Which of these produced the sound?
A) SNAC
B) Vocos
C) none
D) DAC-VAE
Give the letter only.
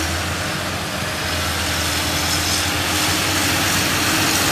C